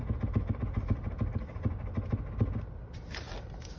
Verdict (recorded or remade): recorded